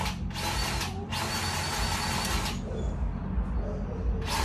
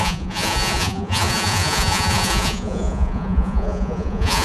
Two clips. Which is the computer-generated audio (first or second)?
second